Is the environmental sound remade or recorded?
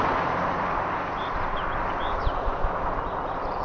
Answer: remade